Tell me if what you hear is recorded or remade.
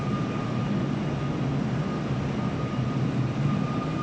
recorded